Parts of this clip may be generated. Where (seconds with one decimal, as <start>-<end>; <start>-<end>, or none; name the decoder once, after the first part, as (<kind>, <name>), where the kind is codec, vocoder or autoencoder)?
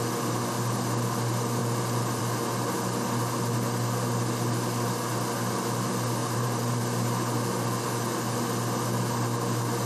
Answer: 6.2-6.8 (vocoder, BigVGAN v2)